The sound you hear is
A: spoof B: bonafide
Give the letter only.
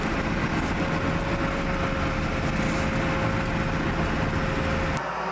B